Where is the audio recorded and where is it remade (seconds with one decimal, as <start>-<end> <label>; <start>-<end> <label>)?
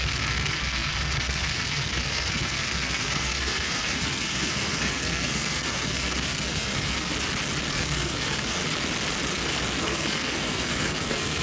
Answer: 0.0-7.1 remade; 7.1-7.7 recorded; 7.7-8.6 remade; 8.6-9.8 recorded; 9.8-11.4 remade